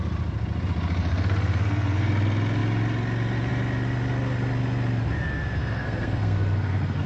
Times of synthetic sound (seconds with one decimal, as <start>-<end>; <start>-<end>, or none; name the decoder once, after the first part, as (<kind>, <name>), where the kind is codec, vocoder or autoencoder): 1.0-2.1 (codec, SNAC); 5.6-7.1